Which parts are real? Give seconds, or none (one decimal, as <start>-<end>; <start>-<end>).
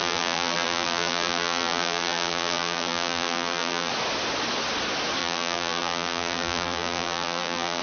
3.9-5.2